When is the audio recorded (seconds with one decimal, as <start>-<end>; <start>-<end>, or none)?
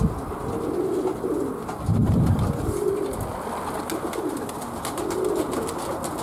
0.0-2.0; 2.9-6.2